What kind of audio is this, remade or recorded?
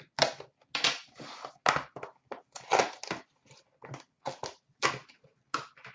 recorded